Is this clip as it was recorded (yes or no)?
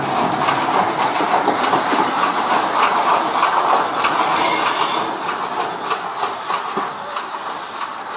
yes